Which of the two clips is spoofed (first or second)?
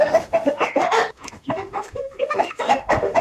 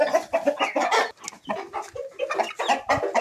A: first